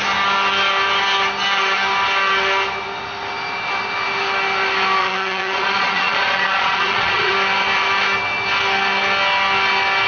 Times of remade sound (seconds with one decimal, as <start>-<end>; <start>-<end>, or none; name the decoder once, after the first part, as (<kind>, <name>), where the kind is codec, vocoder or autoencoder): 5.0-7.3 (vocoder, Vocos)